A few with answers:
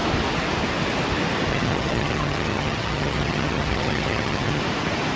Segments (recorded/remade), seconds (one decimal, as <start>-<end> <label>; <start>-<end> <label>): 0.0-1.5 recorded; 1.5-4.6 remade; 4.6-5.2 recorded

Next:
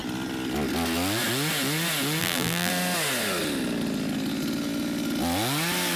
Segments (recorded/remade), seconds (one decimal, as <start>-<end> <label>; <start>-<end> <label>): 0.0-2.2 recorded; 2.2-2.7 remade; 2.7-6.0 recorded

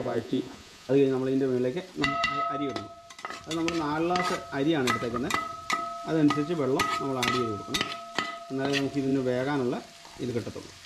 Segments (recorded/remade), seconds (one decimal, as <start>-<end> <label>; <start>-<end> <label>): 0.0-0.9 remade; 0.9-10.9 recorded

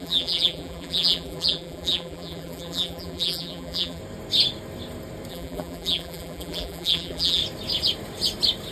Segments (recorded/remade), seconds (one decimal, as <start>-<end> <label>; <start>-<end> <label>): 0.0-4.0 remade; 4.0-5.3 recorded; 5.3-7.4 remade; 7.4-8.7 recorded

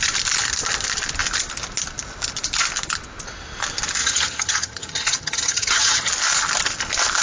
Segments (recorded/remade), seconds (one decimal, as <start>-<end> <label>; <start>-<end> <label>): 0.0-4.0 recorded; 4.0-6.1 remade; 6.1-7.2 recorded

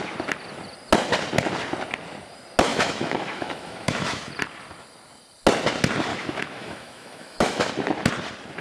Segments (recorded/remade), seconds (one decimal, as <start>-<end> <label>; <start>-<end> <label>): 0.0-2.7 recorded; 2.7-4.3 remade; 4.3-6.1 recorded; 6.1-7.7 remade; 7.7-8.6 recorded

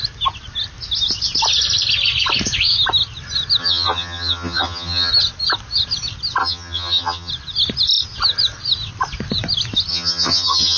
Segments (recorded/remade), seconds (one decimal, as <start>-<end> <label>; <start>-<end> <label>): 0.0-3.6 recorded; 3.6-5.1 remade; 5.1-6.4 recorded; 6.4-7.3 remade; 7.3-9.9 recorded; 9.9-10.8 remade

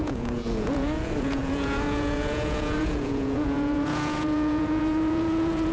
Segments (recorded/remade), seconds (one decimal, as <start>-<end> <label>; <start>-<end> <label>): 0.0-5.7 remade